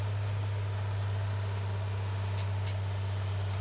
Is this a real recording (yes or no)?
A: yes